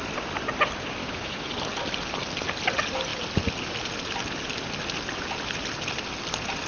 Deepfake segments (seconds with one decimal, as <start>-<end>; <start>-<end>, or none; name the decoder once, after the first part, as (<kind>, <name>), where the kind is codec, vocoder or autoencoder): 1.0-1.5 (autoencoder, DAC-VAE)